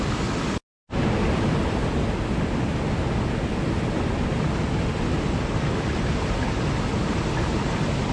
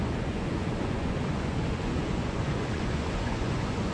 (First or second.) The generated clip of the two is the second